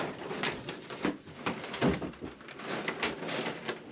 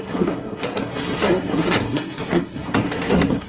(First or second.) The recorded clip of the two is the first